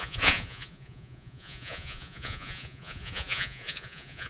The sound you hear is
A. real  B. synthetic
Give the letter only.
B